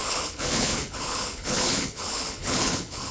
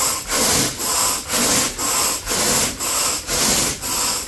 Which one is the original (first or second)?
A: second